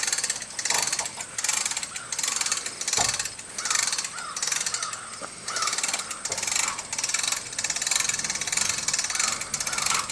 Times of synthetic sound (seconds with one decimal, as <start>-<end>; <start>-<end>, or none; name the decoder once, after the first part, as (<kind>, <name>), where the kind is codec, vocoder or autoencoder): none